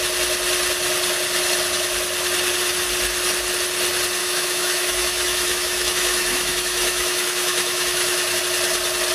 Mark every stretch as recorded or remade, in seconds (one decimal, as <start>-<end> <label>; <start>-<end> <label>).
0.0-4.2 recorded; 4.2-8.4 remade; 8.4-9.1 recorded